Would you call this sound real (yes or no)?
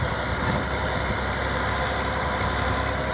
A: yes